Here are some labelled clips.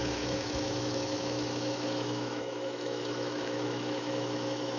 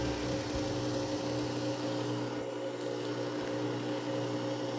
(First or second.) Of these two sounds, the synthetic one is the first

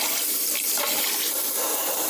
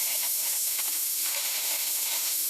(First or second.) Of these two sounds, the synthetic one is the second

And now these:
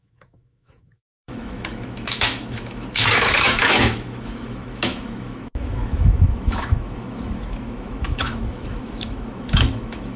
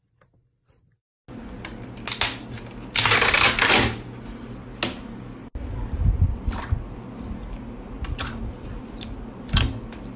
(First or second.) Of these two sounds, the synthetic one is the first